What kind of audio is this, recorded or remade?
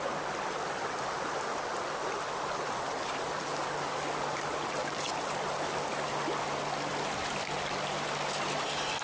recorded